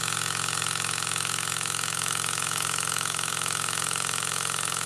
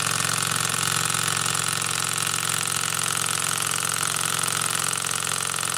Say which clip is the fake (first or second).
first